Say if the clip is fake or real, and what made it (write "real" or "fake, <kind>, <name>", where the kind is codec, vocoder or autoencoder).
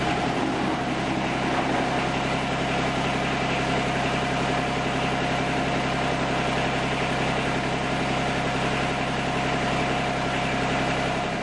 real